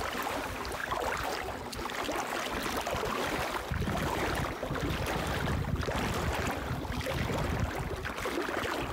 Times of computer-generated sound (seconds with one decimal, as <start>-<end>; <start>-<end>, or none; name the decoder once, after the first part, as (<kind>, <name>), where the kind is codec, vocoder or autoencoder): none